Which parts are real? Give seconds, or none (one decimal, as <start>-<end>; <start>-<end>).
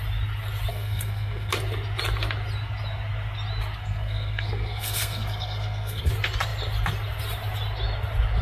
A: 0.0-0.7; 1.5-3.8; 6.1-8.4